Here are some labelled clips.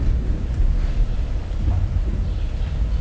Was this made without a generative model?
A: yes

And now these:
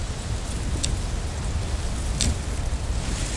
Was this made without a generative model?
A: yes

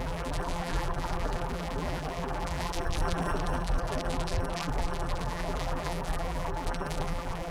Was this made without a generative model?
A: no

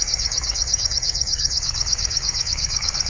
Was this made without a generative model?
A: no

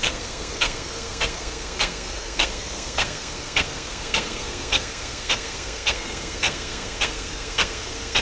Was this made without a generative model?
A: no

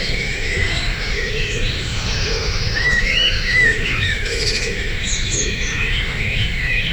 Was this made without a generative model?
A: no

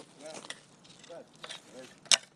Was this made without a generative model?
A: yes